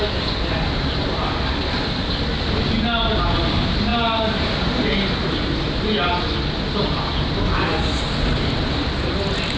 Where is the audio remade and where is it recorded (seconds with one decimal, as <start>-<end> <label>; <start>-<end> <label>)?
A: 0.0-9.6 recorded